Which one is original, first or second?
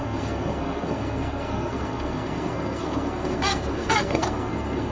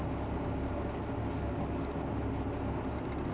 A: second